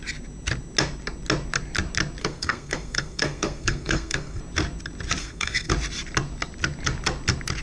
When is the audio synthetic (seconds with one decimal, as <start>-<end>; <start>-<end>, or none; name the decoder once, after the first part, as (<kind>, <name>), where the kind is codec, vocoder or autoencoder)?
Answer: 2.2-4.4 (codec, SNAC); 5.2-5.7